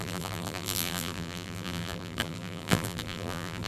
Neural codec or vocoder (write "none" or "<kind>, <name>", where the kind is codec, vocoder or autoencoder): vocoder, BigVGAN v2